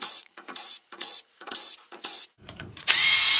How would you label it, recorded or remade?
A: remade